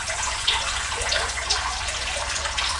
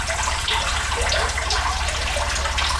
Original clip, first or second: second